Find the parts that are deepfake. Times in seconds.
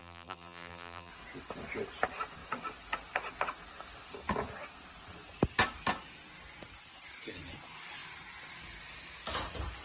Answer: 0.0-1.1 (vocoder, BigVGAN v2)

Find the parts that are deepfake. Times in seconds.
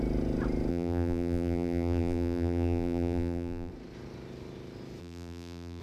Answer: 0.7-3.7 (vocoder, BigVGAN v2); 5.0-5.8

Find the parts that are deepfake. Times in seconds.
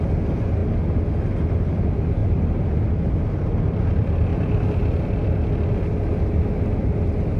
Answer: 2.2-2.9 (vocoder, BigVGAN v2); 4.3-4.8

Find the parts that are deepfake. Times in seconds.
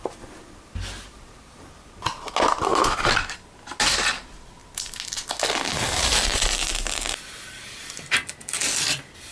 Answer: none